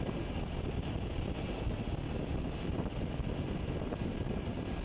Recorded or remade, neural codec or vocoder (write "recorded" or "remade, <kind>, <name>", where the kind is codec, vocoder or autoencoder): recorded